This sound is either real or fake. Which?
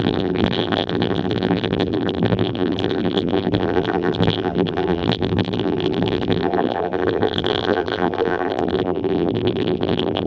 fake